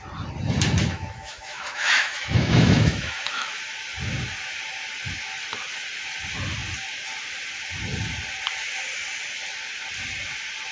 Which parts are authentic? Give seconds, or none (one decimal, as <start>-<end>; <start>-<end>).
0.0-0.9; 3.6-10.7